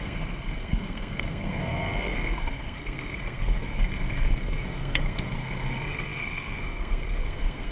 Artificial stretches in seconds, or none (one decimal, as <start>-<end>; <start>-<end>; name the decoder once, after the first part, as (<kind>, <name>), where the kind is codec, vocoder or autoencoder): 0.0-7.7 (codec, SNAC)